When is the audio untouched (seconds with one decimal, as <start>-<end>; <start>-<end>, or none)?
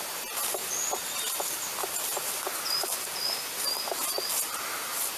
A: 0.0-5.2